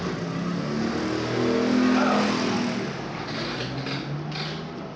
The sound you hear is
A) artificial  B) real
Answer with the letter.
B